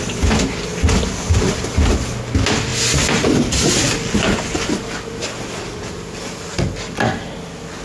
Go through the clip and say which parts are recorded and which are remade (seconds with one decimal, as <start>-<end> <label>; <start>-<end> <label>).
0.0-7.8 recorded